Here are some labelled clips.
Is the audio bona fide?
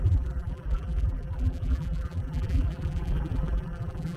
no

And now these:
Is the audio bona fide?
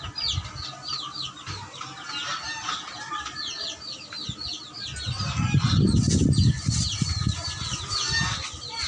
yes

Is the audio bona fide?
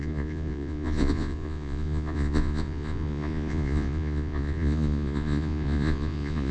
no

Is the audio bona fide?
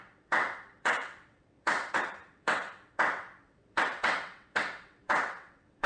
no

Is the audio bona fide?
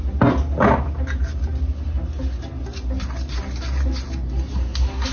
yes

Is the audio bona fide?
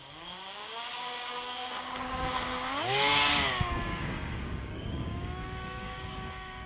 no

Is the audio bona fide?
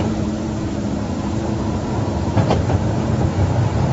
no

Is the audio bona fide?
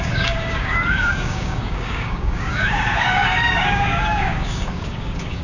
no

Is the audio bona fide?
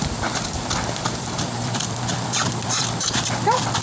no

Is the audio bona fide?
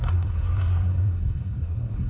no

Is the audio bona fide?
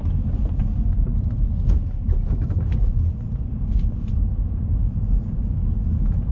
no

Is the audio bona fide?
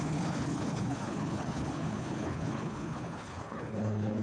no